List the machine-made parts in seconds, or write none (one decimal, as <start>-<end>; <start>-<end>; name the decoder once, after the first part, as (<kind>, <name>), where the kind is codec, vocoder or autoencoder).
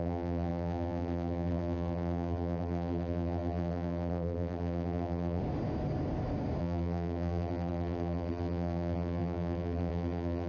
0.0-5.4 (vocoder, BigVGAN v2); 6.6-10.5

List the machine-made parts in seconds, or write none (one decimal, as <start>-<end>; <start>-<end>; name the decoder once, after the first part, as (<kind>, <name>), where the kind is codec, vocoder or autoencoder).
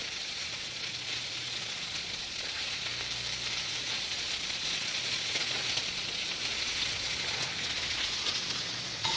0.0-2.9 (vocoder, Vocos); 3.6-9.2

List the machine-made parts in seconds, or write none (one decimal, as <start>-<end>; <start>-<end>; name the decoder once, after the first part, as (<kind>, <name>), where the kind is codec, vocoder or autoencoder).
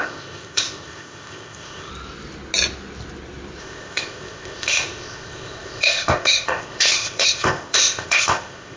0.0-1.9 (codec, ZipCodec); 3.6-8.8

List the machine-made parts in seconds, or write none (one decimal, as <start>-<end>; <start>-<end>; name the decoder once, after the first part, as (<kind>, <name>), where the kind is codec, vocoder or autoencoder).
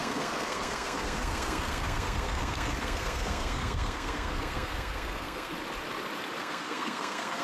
0.0-5.5 (codec, SNAC); 6.4-7.4